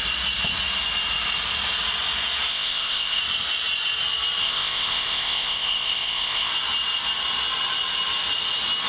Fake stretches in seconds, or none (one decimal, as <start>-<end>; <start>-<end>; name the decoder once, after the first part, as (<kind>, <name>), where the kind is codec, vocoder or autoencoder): 2.5-3.2 (codec, ZipCodec); 4.4-6.5